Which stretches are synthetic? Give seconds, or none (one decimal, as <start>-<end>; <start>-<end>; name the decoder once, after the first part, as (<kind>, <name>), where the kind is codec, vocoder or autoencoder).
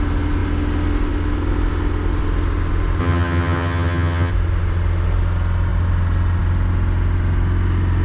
3.0-4.3 (vocoder, HiFi-GAN)